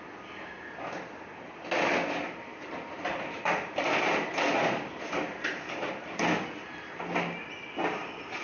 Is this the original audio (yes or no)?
yes